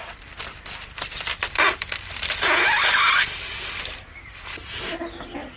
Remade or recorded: remade